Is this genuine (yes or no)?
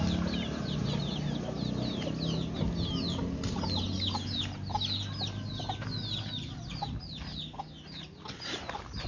yes